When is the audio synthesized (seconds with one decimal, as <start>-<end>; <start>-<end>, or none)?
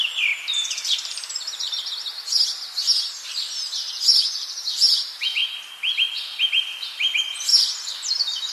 0.0-5.4; 6.4-7.5; 8.1-8.5